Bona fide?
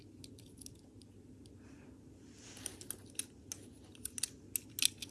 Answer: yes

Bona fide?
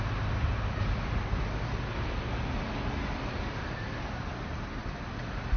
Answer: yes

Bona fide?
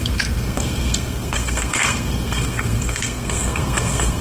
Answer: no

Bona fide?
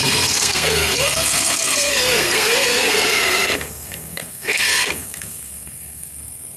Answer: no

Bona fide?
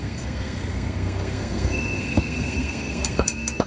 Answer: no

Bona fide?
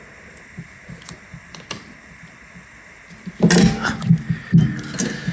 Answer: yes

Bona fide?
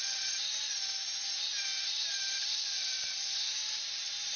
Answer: yes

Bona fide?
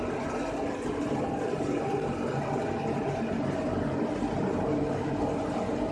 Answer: yes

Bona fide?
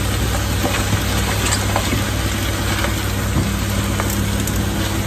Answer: yes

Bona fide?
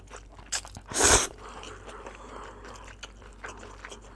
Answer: yes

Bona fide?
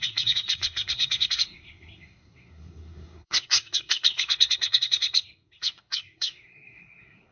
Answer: no